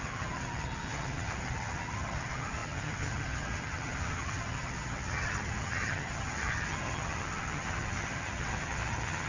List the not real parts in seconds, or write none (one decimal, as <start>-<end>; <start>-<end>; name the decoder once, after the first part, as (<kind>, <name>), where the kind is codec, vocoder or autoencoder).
0.0-9.3 (vocoder, HiFi-GAN)